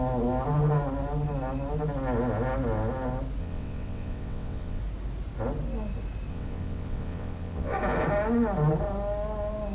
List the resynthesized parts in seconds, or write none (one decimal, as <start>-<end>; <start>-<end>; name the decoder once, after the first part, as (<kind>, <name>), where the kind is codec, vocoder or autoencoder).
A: 3.4-4.8 (vocoder, WaveNeXt); 6.3-7.8